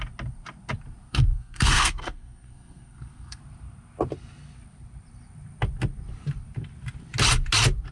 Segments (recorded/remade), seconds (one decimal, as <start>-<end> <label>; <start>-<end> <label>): 0.0-1.1 recorded; 1.1-3.4 remade; 3.4-7.9 recorded